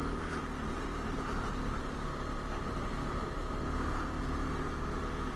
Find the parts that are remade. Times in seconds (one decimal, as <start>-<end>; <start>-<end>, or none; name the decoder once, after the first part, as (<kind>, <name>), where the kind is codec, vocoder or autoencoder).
none